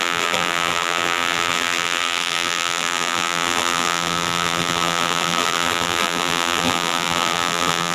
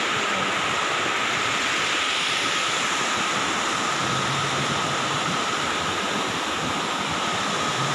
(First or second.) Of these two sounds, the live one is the second